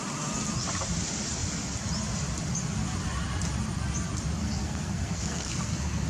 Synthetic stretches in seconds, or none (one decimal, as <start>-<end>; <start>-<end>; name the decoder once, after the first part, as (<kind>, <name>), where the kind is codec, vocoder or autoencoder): 4.4-6.1 (codec, SNAC)